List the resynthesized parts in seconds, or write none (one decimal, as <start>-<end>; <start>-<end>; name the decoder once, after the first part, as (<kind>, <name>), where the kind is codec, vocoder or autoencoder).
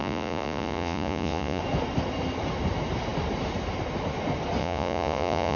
0.0-1.6 (vocoder, Vocos); 4.6-5.6